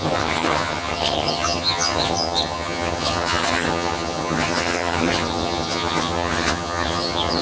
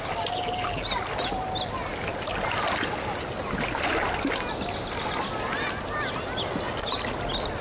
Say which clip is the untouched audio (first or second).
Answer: second